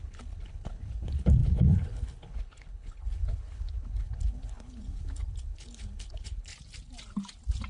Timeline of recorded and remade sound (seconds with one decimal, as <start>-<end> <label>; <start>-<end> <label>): 0.0-6.5 remade; 6.5-7.7 recorded